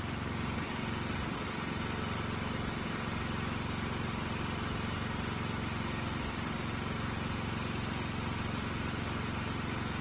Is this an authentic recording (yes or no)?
yes